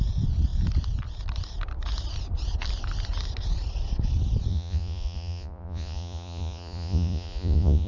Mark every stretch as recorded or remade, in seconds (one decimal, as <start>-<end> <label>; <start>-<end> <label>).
0.0-4.5 recorded; 4.5-7.9 remade